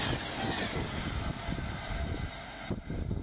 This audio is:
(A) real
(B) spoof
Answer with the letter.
A